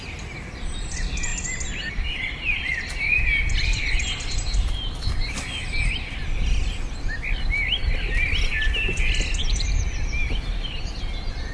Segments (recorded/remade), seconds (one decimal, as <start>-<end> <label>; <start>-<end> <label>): 0.0-11.5 recorded